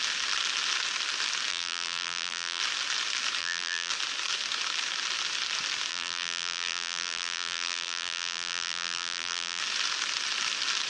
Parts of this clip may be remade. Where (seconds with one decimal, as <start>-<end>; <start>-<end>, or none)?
1.5-2.6; 3.4-3.9; 5.9-9.6